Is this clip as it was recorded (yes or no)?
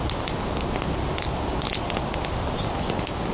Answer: yes